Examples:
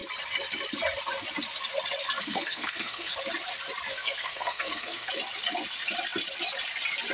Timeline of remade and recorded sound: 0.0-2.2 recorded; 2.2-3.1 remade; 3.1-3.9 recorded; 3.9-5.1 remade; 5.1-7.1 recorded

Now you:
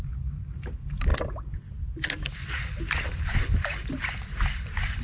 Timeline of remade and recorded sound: 0.0-5.0 recorded

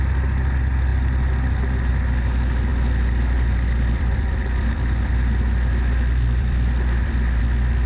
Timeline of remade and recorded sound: 0.0-2.7 recorded; 2.7-7.4 remade; 7.4-7.9 recorded